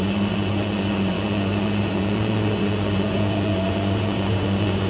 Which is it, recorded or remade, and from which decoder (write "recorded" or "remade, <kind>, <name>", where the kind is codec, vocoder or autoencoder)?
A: remade, vocoder, Vocos